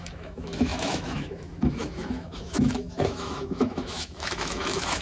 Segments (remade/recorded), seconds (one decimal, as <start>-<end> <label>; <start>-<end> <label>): 0.0-5.0 remade